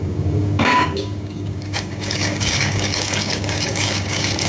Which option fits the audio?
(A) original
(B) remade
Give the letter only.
B